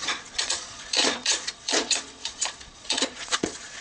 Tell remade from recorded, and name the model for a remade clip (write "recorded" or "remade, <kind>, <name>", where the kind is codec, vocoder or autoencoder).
remade, vocoder, Vocos